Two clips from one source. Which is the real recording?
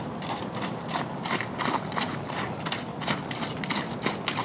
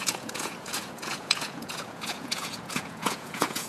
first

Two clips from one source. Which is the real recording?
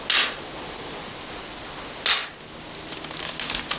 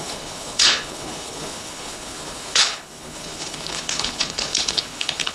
first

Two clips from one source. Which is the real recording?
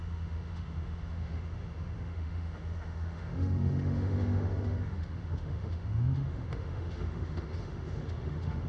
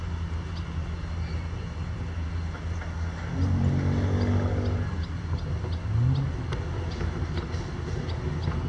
second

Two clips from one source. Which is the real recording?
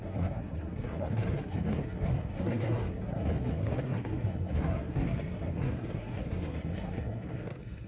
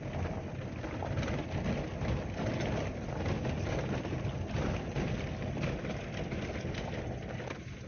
second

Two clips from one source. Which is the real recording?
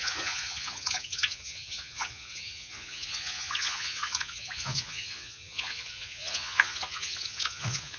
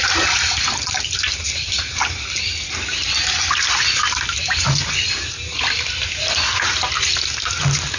second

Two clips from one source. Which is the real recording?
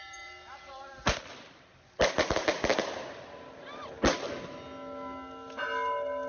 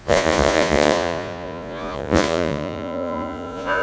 first